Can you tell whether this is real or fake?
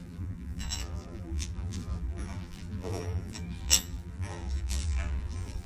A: fake